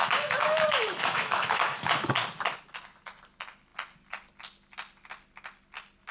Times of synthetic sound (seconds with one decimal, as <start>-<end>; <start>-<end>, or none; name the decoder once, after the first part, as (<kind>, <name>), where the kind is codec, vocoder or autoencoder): 0.0-2.1 (autoencoder, DAC-VAE)